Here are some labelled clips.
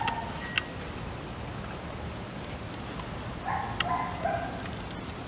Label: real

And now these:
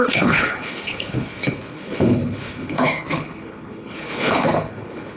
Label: fake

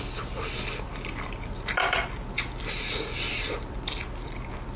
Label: real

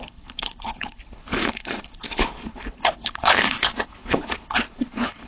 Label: fake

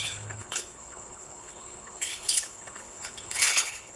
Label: fake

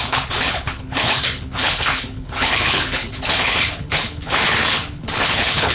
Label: fake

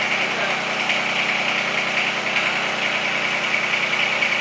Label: real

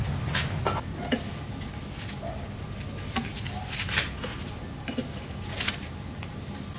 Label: real